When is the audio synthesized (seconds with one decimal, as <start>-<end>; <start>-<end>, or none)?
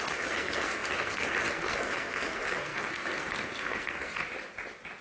0.0-4.2